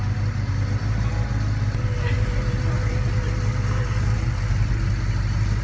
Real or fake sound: real